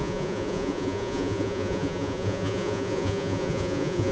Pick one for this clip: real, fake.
fake